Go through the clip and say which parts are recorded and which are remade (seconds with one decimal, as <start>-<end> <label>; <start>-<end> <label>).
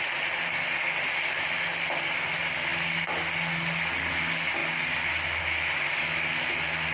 0.0-6.9 recorded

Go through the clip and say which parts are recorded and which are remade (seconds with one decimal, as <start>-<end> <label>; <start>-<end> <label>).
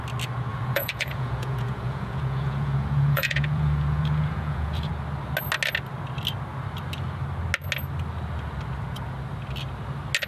0.0-0.5 recorded; 0.5-4.9 remade; 4.9-10.3 recorded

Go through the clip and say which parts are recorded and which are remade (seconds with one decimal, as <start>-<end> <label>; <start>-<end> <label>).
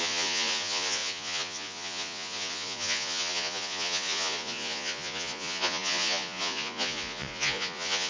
0.0-8.1 remade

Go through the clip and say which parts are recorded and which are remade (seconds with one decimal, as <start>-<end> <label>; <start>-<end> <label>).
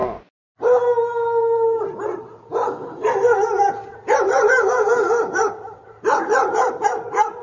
0.0-1.9 recorded; 1.9-2.3 remade; 2.3-3.9 recorded; 3.9-7.4 remade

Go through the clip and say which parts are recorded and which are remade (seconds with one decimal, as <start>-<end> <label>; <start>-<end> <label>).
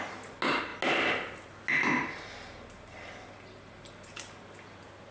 0.0-5.1 recorded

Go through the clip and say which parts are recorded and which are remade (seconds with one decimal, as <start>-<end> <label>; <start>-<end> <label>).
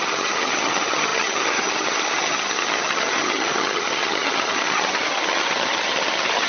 0.0-6.5 remade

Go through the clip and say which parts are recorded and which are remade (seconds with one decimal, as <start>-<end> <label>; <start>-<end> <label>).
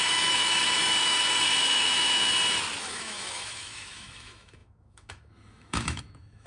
0.0-2.3 remade; 2.3-2.8 recorded; 2.8-6.5 remade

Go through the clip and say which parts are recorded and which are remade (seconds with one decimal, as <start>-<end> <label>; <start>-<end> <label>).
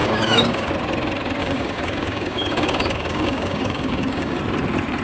0.0-0.7 remade; 0.7-1.4 recorded; 1.4-4.4 remade; 4.4-5.0 recorded